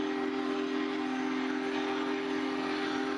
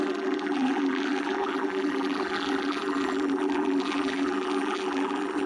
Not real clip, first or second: second